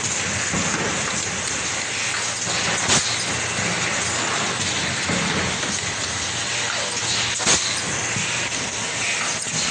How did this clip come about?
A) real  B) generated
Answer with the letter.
A